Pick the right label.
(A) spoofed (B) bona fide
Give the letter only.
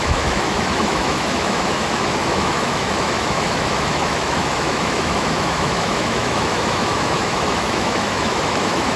A